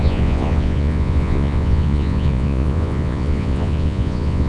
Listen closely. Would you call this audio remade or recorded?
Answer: remade